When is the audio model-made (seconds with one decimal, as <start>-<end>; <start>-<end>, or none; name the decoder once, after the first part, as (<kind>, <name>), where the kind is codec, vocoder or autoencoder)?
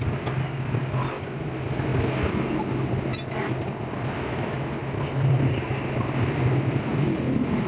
none